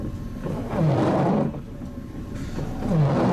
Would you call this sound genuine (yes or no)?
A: yes